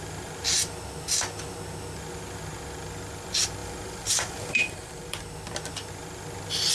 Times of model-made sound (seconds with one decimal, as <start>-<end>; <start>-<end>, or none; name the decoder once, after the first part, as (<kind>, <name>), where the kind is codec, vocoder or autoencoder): 3.6-5.2 (vocoder, BigVGAN v2)

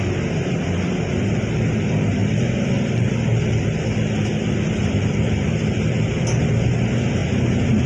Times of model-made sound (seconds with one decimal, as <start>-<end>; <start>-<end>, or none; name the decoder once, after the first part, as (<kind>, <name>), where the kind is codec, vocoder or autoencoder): 2.2-6.6 (vocoder, BigVGAN v2)

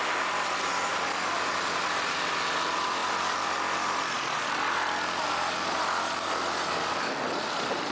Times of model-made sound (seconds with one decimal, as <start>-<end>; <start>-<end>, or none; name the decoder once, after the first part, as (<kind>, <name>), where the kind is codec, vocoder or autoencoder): 0.9-2.3 (vocoder, BigVGAN v2); 3.0-6.9

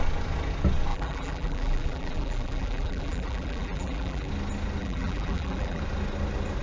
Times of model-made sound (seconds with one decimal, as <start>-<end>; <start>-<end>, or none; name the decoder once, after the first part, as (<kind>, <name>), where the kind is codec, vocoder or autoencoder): 0.9-4.3 (vocoder, BigVGAN v2); 4.8-5.8

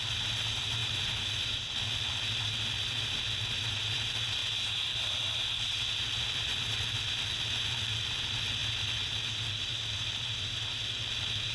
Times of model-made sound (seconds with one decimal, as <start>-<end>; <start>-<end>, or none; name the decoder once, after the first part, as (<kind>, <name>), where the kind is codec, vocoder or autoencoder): 0.8-1.3 (vocoder, BigVGAN v2); 4.4-5.3

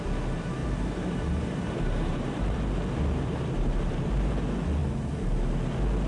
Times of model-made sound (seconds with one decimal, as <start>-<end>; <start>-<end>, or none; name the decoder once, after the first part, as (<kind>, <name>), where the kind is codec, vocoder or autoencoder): 0.6-4.3 (vocoder, BigVGAN v2); 4.8-5.6

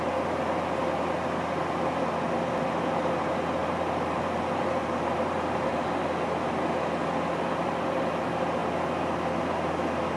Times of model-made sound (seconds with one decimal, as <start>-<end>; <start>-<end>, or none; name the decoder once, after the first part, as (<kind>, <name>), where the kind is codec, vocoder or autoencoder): 3.6-5.9 (vocoder, BigVGAN v2)